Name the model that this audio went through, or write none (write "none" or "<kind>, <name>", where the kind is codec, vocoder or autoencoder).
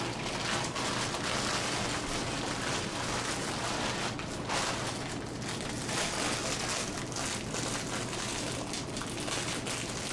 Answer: none